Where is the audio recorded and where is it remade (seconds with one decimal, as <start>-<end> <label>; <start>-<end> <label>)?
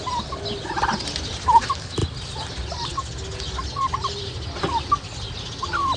0.0-6.0 recorded